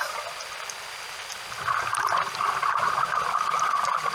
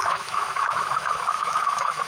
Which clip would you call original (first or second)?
first